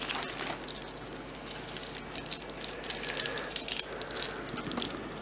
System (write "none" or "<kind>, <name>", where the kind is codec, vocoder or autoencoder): none